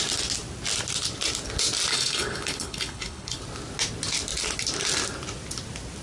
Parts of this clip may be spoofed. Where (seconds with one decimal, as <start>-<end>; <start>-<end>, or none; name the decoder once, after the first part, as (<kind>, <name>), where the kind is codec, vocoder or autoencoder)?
1.9-3.4 (codec, HILCodec)